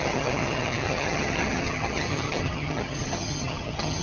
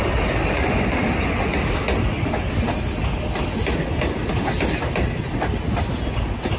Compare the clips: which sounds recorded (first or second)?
second